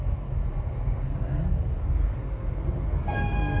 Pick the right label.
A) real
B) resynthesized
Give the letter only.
B